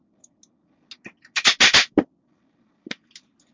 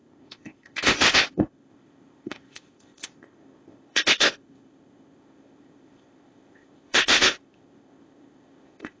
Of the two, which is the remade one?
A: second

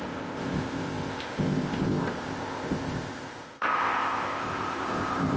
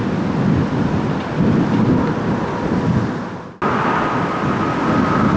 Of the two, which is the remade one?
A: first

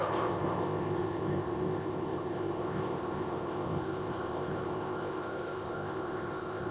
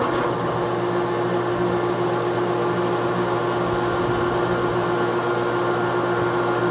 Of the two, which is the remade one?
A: first